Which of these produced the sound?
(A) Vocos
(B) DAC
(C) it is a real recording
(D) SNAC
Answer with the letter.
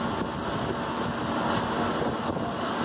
C